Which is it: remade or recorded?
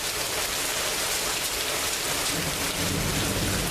recorded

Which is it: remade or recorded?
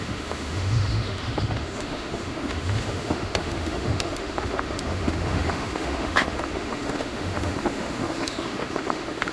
remade